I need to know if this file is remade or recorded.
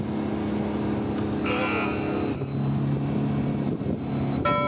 recorded